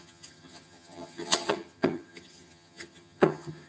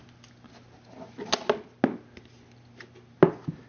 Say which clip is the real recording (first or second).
second